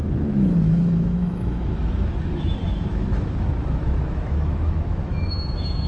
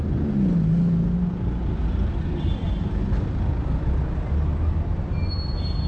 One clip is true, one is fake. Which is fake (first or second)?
first